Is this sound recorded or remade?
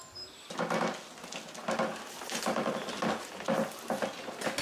recorded